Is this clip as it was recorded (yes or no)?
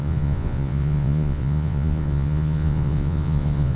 no